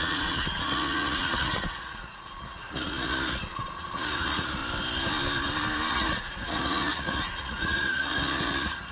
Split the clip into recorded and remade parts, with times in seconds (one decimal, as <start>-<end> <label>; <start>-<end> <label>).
0.0-4.6 remade; 4.6-5.9 recorded; 5.9-8.9 remade